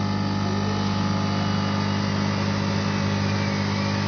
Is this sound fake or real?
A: real